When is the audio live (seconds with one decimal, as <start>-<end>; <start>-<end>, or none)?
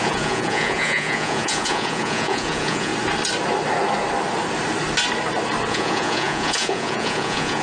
2.9-5.7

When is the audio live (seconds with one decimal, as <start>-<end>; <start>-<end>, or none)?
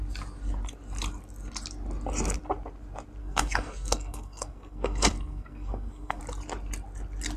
0.0-3.2; 6.2-7.4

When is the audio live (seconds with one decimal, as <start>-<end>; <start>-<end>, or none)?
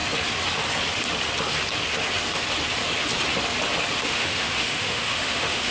0.0-4.0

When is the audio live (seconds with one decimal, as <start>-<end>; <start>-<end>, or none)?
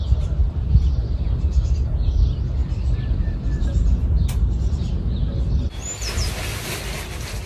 0.0-7.5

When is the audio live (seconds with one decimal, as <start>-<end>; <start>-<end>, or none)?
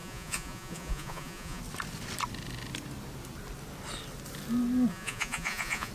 1.6-4.9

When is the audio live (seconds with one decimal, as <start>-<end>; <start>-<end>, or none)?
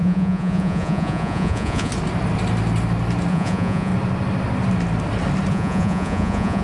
1.9-3.3; 3.9-5.5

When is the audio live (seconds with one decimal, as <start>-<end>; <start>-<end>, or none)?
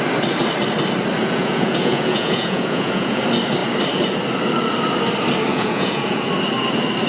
0.0-1.2; 3.2-5.5; 6.3-7.1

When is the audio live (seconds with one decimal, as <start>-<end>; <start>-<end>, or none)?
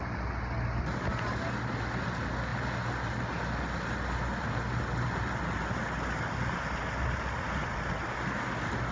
0.0-8.9